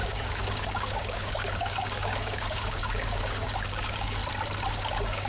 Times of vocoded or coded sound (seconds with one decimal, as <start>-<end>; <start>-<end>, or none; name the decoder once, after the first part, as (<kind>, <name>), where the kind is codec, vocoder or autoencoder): 0.0-4.2 (codec, DAC); 4.7-5.3

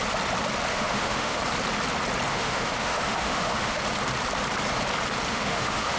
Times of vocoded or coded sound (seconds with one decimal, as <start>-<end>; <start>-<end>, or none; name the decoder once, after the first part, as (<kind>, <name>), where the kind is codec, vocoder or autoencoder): 0.7-1.4 (autoencoder, DAC-VAE); 2.3-3.8; 5.3-6.0

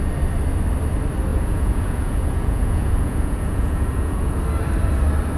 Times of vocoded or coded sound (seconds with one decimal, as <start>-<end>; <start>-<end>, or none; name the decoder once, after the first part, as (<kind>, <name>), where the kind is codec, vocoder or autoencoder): 1.3-4.4 (vocoder, Vocos)